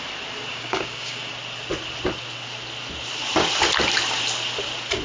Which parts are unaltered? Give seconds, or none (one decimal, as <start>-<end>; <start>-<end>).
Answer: 0.0-0.5; 1.3-5.0